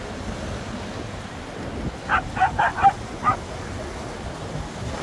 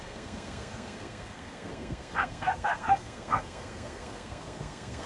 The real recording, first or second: first